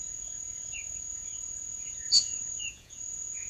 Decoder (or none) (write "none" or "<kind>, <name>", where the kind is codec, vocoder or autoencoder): vocoder, Vocos